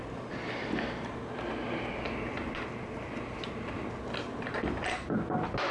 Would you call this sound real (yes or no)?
yes